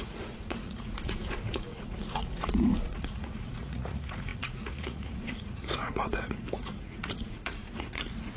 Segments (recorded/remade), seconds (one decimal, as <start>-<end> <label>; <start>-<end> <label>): 0.0-8.4 remade